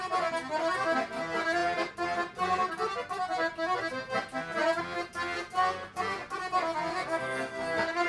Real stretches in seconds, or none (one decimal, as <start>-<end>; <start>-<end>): 0.0-6.9

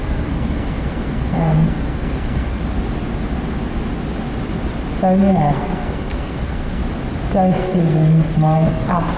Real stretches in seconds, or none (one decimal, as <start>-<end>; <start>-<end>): 2.6-5.2; 6.8-7.4

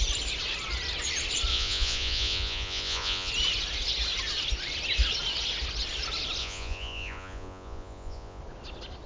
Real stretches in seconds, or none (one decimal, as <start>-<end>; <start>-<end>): 0.0-1.5; 3.3-6.4; 8.4-9.1